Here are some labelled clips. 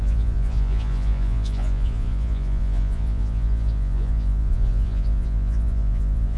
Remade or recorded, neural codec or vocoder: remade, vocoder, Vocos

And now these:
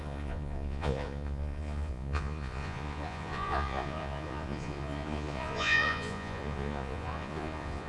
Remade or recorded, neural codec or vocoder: remade, vocoder, Vocos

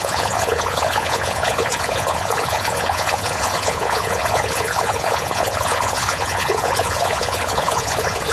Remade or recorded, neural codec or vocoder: remade, vocoder, Vocos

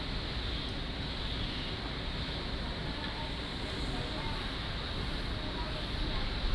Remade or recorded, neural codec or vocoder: recorded